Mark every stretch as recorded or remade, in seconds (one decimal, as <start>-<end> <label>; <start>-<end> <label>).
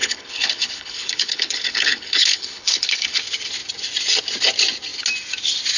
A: 0.0-3.2 remade; 3.2-5.8 recorded